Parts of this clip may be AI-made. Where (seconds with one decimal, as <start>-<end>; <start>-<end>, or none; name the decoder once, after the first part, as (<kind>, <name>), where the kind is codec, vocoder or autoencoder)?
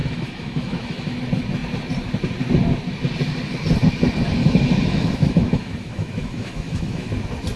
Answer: 0.0-1.2 (autoencoder, DAC-VAE); 4.4-7.1